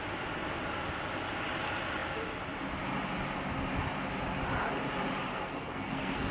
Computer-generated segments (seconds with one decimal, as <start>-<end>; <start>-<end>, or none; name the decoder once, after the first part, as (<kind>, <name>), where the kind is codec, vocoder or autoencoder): 5.3-6.3 (codec, SNAC)